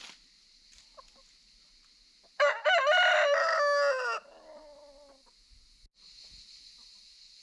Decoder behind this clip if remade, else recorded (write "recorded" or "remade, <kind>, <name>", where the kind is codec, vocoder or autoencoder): recorded